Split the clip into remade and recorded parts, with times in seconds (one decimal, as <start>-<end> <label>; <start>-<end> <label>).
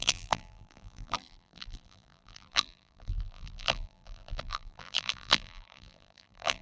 0.0-6.6 remade